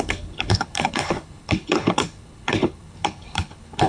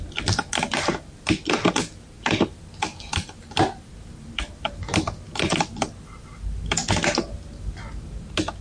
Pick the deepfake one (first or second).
first